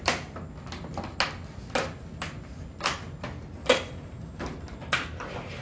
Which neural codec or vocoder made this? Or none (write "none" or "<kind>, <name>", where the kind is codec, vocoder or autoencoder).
none